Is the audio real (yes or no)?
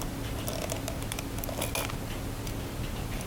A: yes